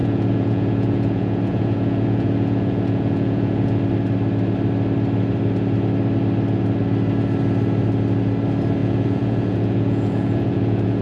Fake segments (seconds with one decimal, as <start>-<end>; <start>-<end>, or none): 0.0-3.8; 8.8-11.0